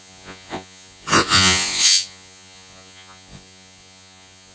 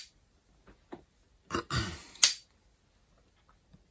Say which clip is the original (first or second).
second